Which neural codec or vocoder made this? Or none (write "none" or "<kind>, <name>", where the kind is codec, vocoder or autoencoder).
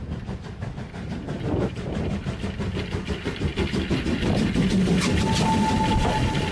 none